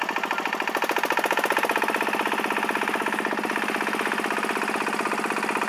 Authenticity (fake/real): real